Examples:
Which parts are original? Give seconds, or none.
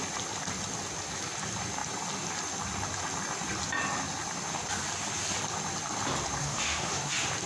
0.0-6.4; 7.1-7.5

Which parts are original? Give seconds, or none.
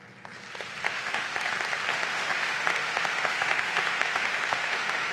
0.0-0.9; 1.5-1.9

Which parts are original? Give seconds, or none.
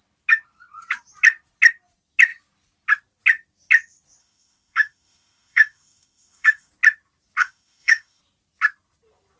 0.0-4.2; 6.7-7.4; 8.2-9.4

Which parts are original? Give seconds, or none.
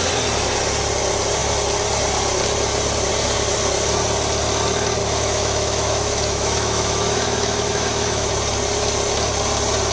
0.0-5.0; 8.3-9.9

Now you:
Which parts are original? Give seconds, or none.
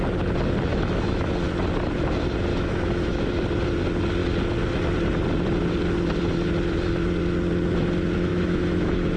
0.0-0.7; 1.3-2.5; 3.3-8.3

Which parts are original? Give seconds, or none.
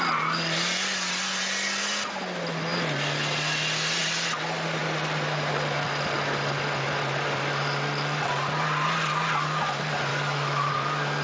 0.0-10.1; 10.7-11.2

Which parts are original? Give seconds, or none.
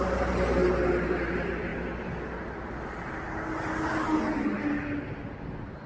0.0-5.9